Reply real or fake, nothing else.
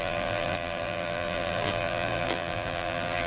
fake